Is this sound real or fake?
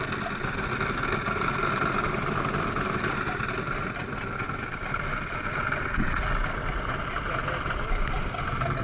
real